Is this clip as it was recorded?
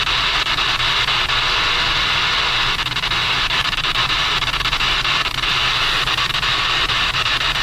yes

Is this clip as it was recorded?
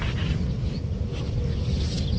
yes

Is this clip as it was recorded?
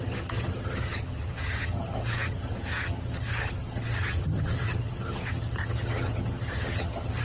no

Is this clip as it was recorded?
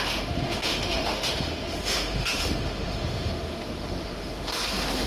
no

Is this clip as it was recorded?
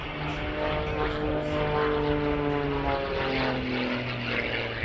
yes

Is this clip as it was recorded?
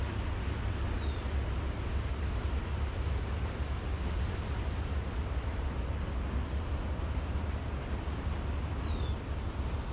yes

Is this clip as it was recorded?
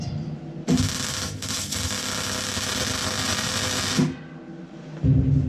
yes